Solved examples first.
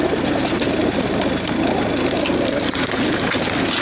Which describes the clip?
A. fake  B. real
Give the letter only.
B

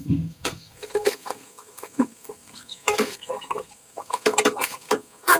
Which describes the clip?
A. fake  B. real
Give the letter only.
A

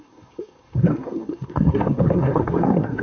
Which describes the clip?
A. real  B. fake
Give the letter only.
B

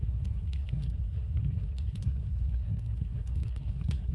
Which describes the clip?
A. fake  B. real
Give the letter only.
A